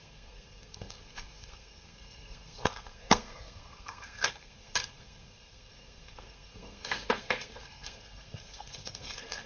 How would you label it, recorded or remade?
remade